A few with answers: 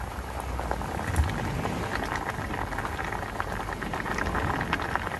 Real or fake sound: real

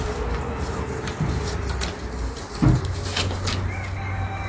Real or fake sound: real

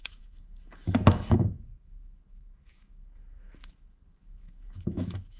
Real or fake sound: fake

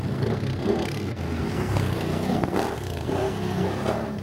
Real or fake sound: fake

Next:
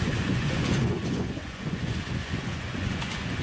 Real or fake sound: fake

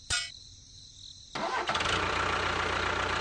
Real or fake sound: real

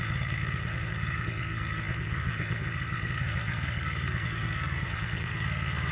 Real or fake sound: fake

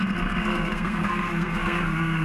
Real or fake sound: fake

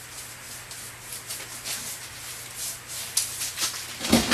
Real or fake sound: real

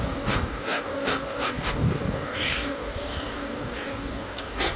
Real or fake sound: fake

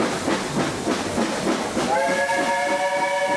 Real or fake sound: real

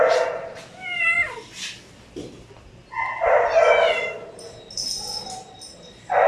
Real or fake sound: real